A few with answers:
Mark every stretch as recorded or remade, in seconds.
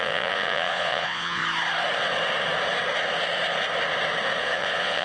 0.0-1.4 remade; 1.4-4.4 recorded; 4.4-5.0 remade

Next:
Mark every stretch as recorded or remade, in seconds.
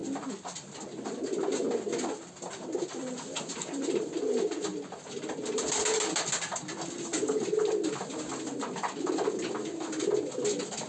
0.0-10.9 recorded